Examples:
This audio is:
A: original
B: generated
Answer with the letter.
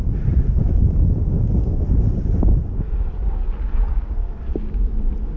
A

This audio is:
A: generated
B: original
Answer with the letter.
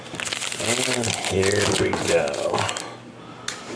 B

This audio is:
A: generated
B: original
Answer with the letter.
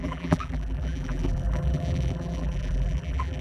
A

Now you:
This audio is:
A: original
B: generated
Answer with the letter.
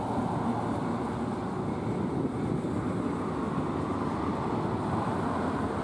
A